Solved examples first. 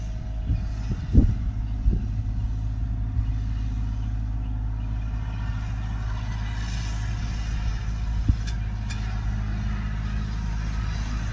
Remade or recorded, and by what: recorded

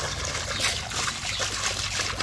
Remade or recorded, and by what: recorded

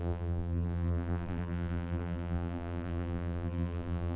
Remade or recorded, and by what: remade, vocoder, BigVGAN v2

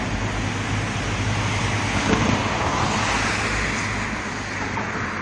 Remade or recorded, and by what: recorded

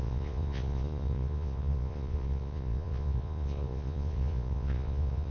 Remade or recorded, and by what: remade, vocoder, Vocos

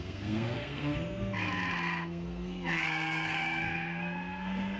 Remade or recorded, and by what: remade, codec, SNAC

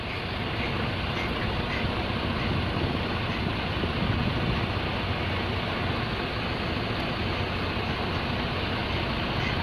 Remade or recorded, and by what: recorded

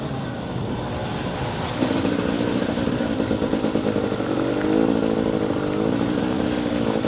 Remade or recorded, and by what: recorded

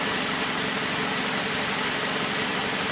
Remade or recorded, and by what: recorded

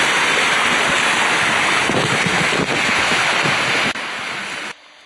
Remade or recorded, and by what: recorded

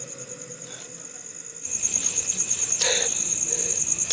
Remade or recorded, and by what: recorded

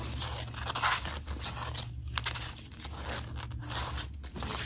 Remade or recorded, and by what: recorded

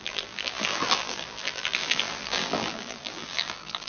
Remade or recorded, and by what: remade, vocoder, BigVGAN v2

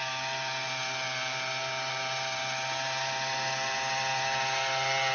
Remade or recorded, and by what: recorded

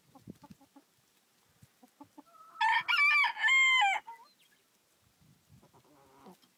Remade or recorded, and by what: recorded